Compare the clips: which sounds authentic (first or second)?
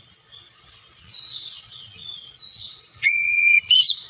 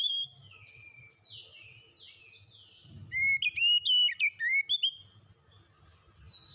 second